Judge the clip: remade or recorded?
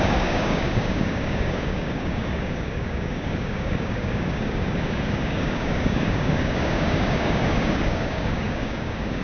remade